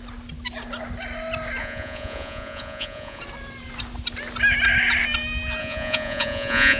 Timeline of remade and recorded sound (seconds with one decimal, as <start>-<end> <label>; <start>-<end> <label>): 0.0-1.6 recorded; 1.6-3.2 remade; 3.2-5.6 recorded; 5.6-6.8 remade